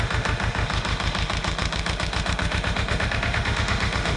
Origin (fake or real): fake